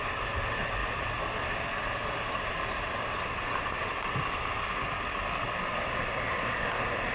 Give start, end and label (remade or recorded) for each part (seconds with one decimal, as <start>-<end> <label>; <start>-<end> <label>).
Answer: 0.0-7.1 recorded